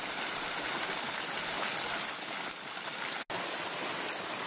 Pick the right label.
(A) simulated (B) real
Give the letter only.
B